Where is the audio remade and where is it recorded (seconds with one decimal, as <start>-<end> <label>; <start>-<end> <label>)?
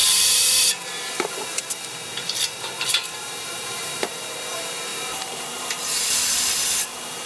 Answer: 0.0-7.2 remade